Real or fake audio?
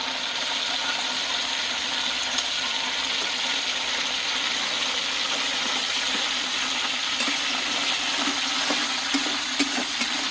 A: real